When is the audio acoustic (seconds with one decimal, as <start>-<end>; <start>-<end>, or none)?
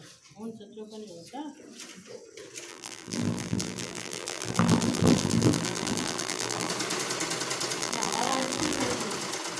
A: 0.0-2.7; 6.7-7.8; 8.8-9.6